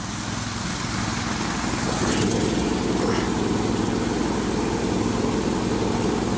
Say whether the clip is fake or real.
real